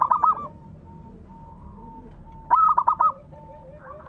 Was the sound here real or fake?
real